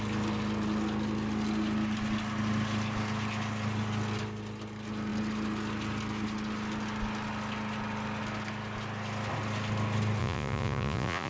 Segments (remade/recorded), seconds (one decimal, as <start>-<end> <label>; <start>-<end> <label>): 0.0-10.2 recorded; 10.2-11.3 remade